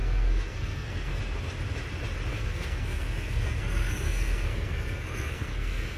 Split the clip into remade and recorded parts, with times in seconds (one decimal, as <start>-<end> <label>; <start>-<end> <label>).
0.0-1.2 remade; 1.2-2.3 recorded; 2.3-6.0 remade